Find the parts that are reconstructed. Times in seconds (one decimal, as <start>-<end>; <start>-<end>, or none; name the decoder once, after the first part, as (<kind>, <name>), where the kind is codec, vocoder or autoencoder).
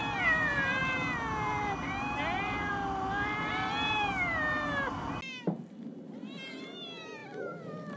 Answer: none